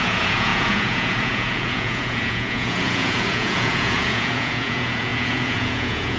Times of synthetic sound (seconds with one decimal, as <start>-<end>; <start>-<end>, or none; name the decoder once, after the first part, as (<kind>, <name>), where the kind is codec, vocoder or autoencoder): 0.0-6.2 (vocoder, Vocos)